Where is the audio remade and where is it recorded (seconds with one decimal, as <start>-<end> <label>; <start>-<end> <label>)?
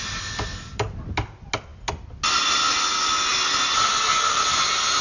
0.0-5.0 recorded